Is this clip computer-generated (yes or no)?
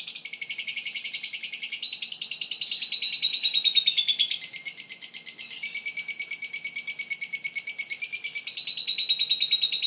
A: no